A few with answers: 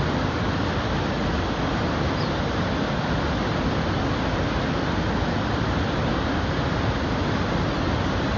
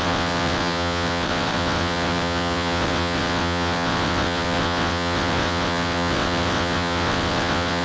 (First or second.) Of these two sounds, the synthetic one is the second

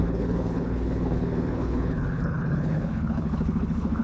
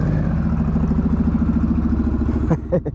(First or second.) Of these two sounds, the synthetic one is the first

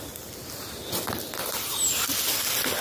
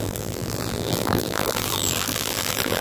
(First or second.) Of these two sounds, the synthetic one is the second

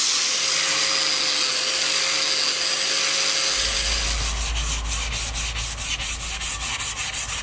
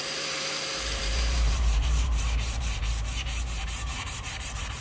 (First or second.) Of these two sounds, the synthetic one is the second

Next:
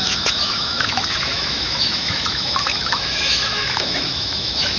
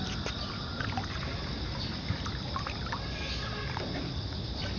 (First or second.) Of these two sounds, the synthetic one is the first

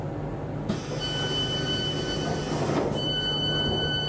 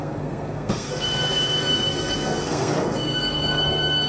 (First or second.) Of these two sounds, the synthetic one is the second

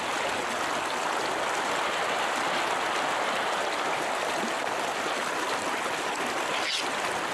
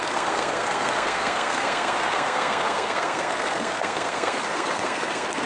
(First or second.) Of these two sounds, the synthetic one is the second